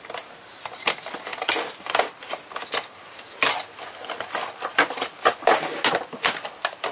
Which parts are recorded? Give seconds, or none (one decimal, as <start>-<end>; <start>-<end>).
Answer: 0.0-6.9